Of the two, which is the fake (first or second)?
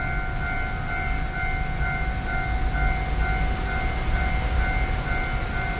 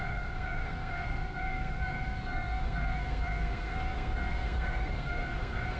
second